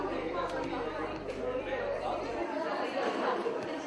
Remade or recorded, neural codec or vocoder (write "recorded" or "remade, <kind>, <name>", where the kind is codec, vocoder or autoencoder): remade, vocoder, BigVGAN v2